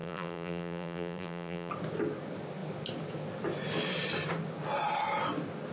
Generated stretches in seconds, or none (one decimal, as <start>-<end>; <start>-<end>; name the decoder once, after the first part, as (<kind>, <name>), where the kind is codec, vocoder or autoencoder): 0.0-1.7 (vocoder, BigVGAN v2)